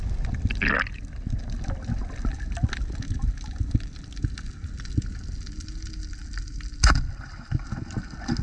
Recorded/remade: recorded